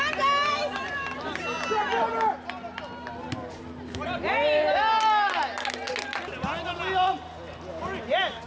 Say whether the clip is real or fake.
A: real